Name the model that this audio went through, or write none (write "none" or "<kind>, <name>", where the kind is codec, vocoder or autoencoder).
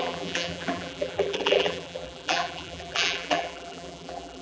vocoder, BigVGAN v2